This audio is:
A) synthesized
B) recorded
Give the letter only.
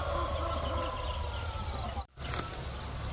B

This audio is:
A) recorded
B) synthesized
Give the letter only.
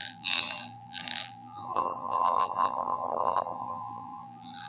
B